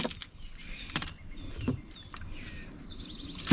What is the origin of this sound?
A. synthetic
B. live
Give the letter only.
B